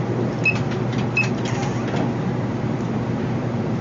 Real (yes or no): yes